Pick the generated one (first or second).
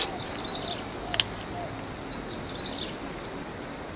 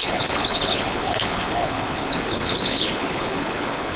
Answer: second